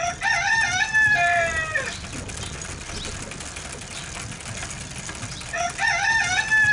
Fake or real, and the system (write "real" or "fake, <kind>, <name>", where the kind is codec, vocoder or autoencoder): real